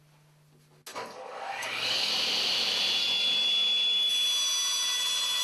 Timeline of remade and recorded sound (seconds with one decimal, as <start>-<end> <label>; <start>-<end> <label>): 0.0-0.9 recorded; 0.9-2.1 remade; 2.1-3.0 recorded; 3.0-4.1 remade; 4.1-5.4 recorded